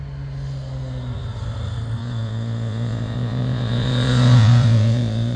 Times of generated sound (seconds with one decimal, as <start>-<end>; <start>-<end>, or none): 2.0-5.4